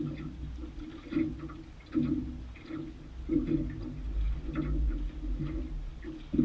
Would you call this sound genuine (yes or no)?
yes